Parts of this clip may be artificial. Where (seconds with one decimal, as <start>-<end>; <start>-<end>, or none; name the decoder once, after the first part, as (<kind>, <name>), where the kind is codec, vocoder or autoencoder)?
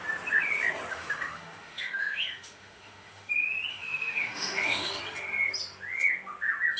0.9-3.3 (autoencoder, DAC-VAE); 3.7-5.0